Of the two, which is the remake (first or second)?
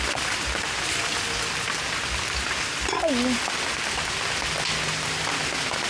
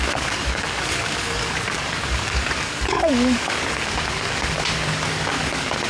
second